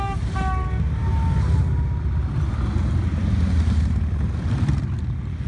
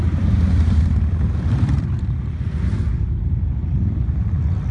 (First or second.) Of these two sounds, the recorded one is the first